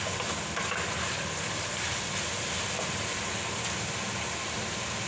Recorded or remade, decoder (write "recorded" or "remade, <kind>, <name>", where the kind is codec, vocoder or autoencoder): recorded